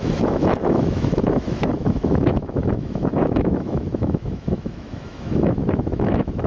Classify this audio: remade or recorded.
remade